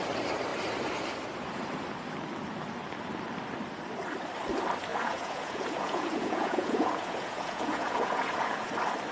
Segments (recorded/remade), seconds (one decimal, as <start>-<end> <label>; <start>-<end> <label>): 0.0-4.9 recorded; 4.9-8.7 remade; 8.7-9.1 recorded